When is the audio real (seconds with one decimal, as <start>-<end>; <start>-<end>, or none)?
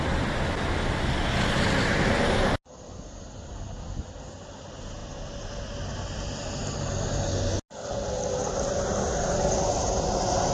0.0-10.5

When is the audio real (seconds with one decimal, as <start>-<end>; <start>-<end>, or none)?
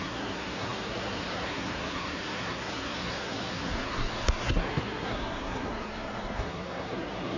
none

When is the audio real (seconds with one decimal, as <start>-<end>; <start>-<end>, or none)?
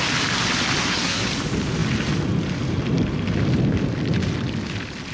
0.0-0.8; 1.3-5.1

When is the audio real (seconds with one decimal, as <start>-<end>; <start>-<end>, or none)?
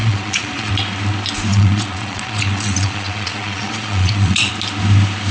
0.7-1.5; 4.5-5.3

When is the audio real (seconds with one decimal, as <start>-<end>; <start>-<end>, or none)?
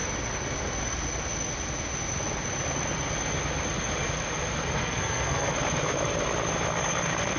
0.0-4.8; 5.5-7.4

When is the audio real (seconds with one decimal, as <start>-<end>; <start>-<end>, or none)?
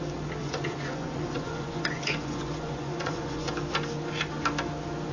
0.0-0.4; 3.5-5.1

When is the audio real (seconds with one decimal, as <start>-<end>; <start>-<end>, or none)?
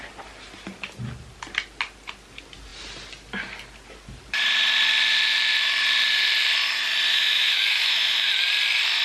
0.0-7.1; 8.3-9.0